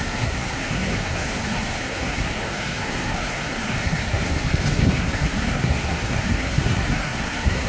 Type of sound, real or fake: fake